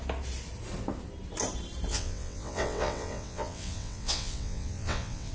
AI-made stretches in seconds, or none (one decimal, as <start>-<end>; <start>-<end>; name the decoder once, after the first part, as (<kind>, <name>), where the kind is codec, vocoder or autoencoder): 1.9-5.3 (vocoder, WaveNeXt)